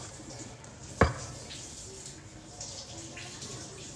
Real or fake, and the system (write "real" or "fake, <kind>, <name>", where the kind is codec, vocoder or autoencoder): real